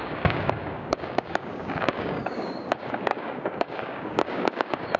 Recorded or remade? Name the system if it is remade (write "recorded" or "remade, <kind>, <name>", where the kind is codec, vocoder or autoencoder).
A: remade, codec, DAC